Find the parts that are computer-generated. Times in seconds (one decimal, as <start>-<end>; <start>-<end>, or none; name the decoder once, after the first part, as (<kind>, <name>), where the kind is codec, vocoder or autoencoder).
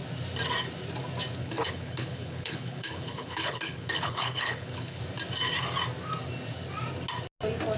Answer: 1.4-5.0 (codec, HILCodec)